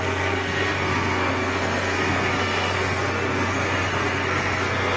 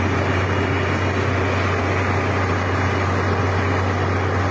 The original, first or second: second